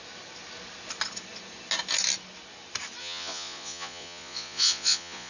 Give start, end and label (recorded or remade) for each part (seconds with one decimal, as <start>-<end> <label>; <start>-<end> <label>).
0.0-3.0 recorded; 3.0-5.3 remade